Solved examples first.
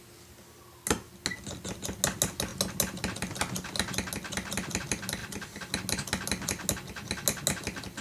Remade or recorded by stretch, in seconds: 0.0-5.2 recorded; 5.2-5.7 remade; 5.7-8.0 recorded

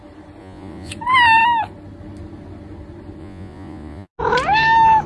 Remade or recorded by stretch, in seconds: 0.0-0.4 recorded; 0.4-0.9 remade; 0.9-3.2 recorded; 3.2-4.1 remade; 4.1-5.1 recorded

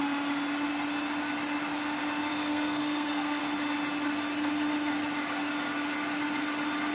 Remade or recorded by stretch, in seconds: 0.0-2.3 recorded; 2.3-3.4 remade; 3.4-6.9 recorded